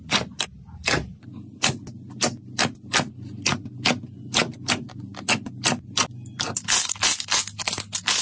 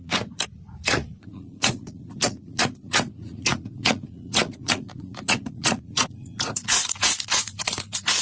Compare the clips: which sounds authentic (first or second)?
first